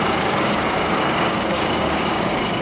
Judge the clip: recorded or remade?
remade